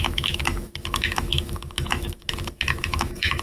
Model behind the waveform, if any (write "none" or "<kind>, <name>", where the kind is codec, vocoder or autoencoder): autoencoder, DAC-VAE